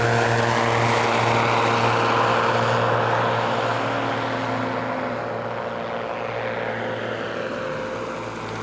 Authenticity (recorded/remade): recorded